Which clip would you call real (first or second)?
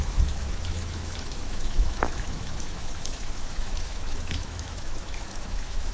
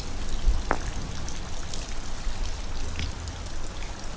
second